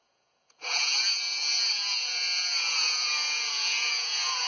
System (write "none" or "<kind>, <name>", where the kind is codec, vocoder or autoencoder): vocoder, Vocos